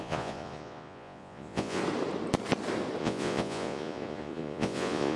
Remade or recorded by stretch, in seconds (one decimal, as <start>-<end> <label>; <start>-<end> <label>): 0.0-1.8 remade; 1.8-3.0 recorded; 3.0-5.2 remade

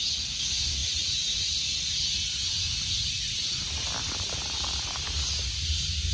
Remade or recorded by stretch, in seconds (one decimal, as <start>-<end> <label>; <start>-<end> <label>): 0.0-6.1 recorded

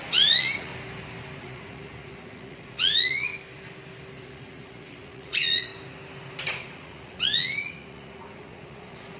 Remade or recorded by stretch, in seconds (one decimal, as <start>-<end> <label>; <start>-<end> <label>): 0.0-0.7 remade; 0.7-1.4 recorded; 1.4-3.3 remade; 3.3-4.2 recorded; 4.2-5.7 remade; 5.7-6.4 recorded; 6.4-9.2 remade